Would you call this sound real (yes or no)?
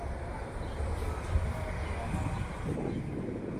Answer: yes